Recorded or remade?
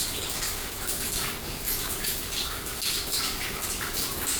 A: remade